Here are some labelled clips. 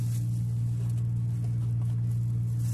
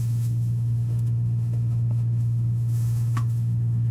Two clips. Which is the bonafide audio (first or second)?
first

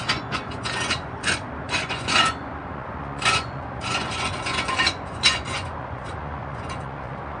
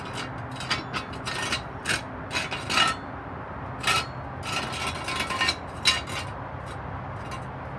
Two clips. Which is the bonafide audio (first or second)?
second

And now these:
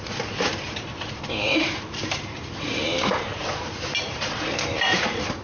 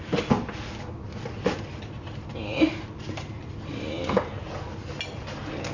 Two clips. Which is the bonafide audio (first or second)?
second